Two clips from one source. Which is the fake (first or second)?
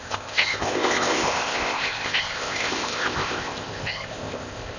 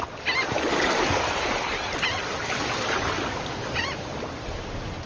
first